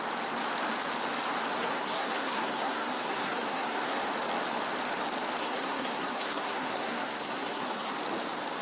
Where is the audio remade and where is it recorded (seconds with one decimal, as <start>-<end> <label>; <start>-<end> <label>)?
0.0-1.5 recorded; 1.5-4.0 remade; 4.0-5.4 recorded; 5.4-7.9 remade; 7.9-8.6 recorded